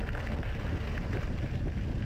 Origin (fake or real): real